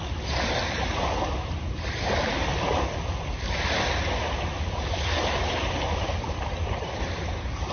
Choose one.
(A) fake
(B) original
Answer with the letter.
B